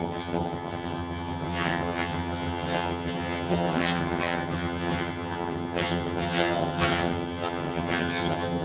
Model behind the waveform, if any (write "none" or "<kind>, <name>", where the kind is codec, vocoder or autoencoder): vocoder, HiFi-GAN